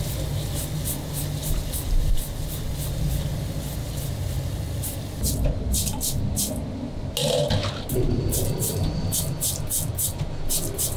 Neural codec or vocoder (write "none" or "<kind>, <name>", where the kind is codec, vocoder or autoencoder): none